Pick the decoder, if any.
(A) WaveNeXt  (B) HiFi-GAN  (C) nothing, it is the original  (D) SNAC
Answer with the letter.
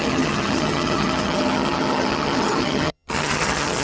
B